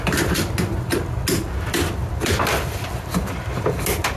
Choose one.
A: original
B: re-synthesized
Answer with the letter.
A